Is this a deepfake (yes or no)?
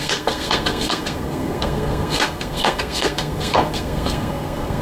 yes